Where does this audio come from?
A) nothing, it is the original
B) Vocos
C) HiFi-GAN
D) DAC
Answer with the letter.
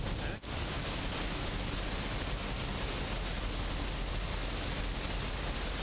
A